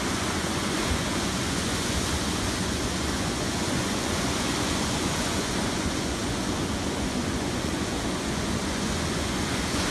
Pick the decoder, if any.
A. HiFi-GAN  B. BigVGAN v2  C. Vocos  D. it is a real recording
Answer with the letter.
C